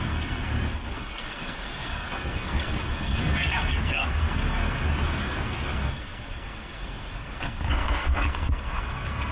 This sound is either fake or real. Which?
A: fake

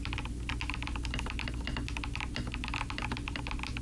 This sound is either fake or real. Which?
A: real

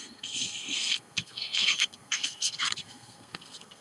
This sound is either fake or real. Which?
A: fake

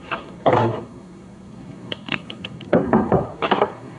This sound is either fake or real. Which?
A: fake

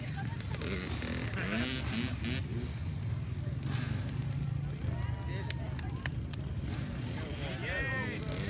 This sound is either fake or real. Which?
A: real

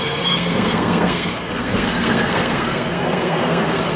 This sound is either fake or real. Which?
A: fake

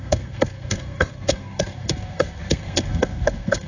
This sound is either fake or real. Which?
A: fake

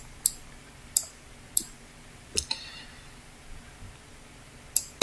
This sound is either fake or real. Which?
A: real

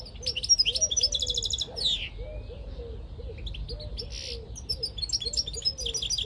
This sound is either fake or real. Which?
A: real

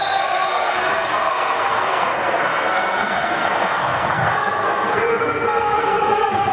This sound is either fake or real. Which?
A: fake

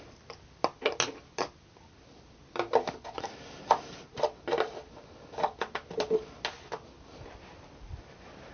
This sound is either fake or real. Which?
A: real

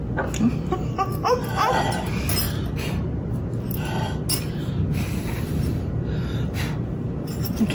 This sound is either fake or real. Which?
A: real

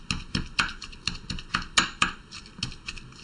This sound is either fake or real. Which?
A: real